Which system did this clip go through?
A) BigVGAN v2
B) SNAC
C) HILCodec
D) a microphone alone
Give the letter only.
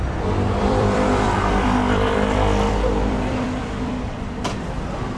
A